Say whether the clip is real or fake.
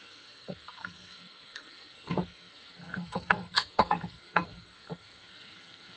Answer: fake